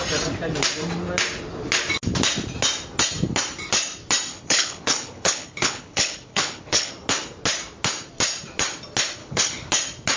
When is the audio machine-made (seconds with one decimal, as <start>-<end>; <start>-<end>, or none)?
4.3-6.9; 9.2-9.7